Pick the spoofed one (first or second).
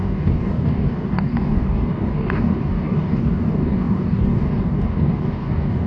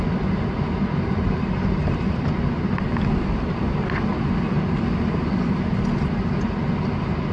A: first